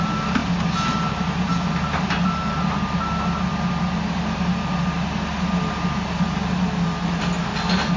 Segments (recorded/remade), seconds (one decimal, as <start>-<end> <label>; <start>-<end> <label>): 0.0-8.0 recorded